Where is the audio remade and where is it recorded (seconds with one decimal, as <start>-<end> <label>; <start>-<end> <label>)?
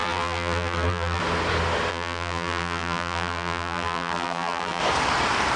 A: 0.0-1.2 remade; 1.2-1.9 recorded; 1.9-4.8 remade; 4.8-5.6 recorded